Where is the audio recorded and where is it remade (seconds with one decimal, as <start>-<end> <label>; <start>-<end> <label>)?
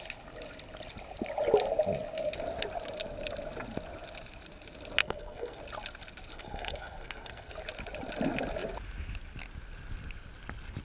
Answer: 0.0-5.0 recorded; 5.0-5.6 remade; 5.6-6.3 recorded; 6.3-7.5 remade; 7.5-10.8 recorded